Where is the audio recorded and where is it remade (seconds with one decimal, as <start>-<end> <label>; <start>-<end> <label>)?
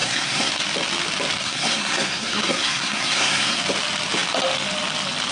0.0-0.5 remade; 0.5-1.4 recorded; 1.4-3.6 remade; 3.6-5.3 recorded